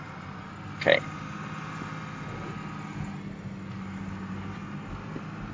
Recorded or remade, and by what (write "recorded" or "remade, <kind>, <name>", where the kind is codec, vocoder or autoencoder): recorded